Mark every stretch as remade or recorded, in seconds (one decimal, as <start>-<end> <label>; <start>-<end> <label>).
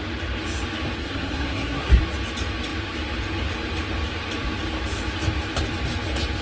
0.0-1.0 recorded; 1.0-2.0 remade; 2.0-6.4 recorded